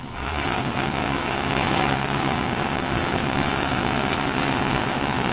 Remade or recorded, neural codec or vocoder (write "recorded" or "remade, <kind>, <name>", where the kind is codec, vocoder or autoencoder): remade, vocoder, WaveNeXt